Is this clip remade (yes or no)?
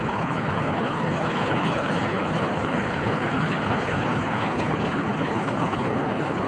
yes